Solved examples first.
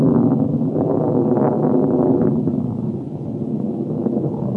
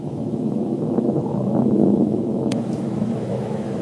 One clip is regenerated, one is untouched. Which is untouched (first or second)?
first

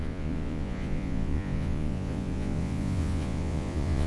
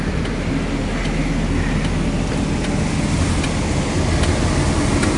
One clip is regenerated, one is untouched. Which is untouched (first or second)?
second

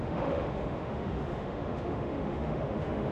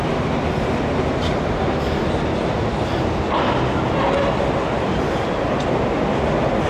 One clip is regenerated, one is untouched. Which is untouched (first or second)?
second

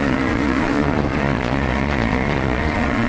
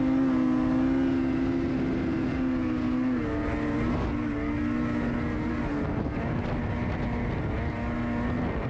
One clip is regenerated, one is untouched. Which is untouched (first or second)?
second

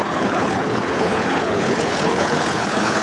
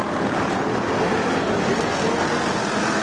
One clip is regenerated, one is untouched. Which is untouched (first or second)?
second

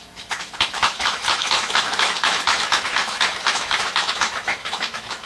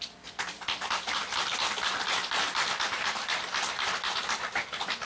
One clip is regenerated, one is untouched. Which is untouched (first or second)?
second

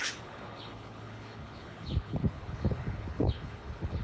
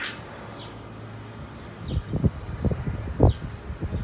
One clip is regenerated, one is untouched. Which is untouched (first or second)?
second